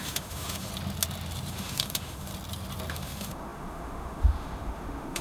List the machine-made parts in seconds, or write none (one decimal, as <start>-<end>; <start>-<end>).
0.0-0.7; 1.5-2.3; 2.9-5.2